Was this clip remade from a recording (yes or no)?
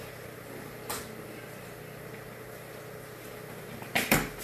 no